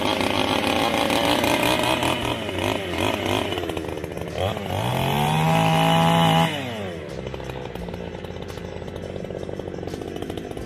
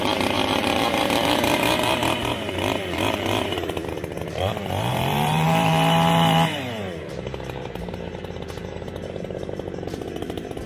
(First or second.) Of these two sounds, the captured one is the first